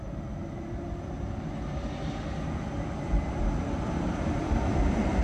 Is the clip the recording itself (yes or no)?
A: no